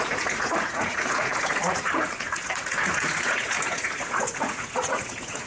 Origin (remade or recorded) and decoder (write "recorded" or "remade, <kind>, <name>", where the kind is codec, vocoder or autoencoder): remade, vocoder, Vocos